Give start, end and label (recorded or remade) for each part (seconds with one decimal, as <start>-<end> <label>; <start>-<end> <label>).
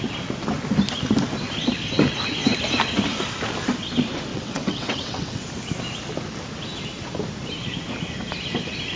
0.0-4.3 recorded; 4.3-5.4 remade; 5.4-9.0 recorded